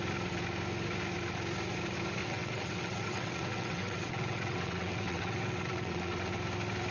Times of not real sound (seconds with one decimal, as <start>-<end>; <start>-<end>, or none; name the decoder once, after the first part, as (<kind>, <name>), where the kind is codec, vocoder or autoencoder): 2.2-6.3 (vocoder, WaveNeXt)